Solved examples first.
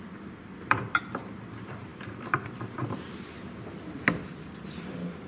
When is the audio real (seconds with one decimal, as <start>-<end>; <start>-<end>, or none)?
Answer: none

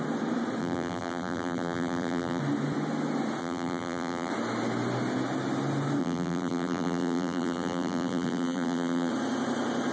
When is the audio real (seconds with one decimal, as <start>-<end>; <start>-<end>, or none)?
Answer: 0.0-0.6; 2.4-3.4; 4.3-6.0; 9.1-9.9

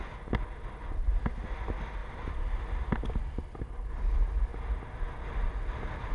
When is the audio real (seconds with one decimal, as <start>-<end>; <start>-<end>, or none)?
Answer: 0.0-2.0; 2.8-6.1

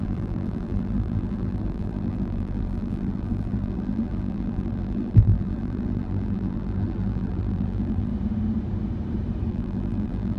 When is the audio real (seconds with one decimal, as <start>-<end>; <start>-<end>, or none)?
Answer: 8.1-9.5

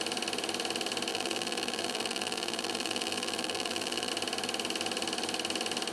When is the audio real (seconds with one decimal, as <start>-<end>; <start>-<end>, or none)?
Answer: 0.0-1.1; 4.1-5.9

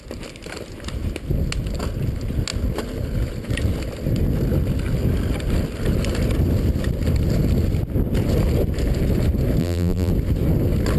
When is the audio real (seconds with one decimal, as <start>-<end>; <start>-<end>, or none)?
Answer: 0.0-9.6; 10.1-11.0